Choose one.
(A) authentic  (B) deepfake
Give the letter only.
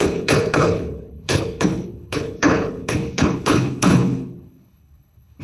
B